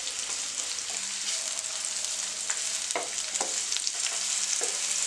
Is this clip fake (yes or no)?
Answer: no